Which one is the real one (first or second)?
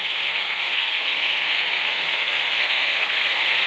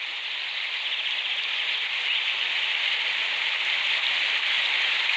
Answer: second